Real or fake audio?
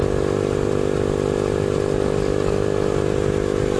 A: real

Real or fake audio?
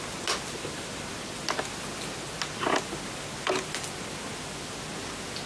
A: real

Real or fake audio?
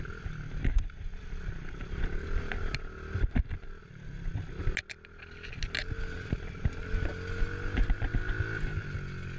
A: real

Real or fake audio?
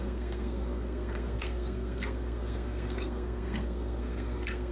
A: fake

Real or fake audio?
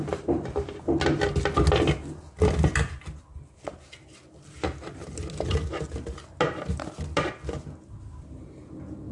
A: real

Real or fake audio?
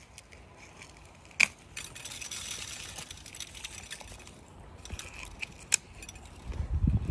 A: real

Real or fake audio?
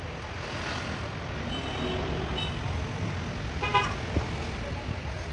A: real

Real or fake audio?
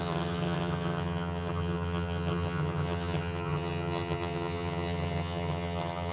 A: fake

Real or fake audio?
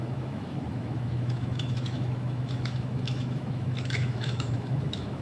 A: fake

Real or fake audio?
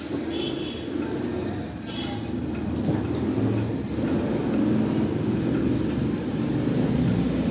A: real